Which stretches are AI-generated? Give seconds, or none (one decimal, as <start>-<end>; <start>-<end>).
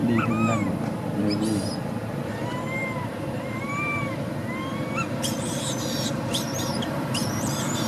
2.3-7.9